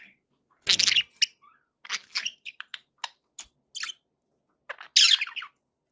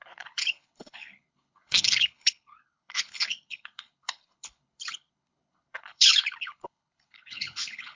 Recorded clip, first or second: first